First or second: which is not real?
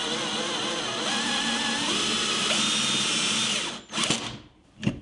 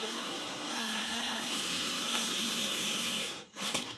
second